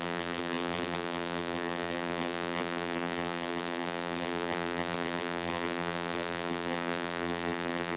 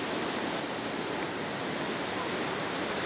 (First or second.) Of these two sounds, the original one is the second